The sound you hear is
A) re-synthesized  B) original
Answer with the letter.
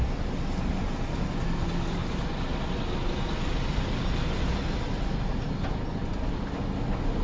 B